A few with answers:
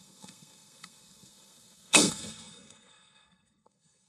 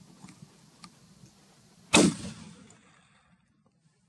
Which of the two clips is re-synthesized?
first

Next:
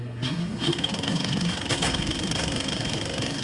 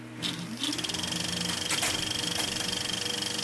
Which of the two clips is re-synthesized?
first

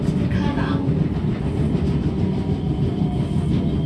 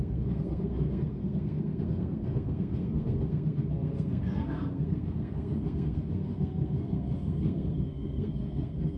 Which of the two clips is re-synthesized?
second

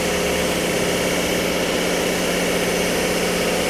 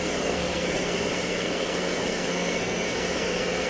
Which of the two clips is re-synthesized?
second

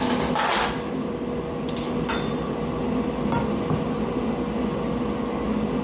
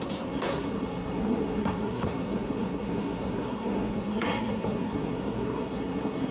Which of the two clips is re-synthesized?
second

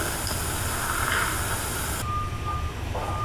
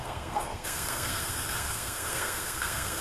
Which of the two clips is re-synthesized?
second